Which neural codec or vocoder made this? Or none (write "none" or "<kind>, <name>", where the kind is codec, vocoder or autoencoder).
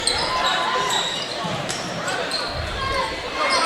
vocoder, BigVGAN v2